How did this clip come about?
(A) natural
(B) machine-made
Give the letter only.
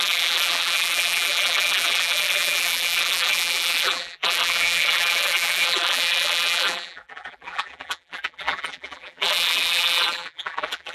B